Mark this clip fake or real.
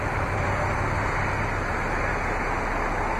real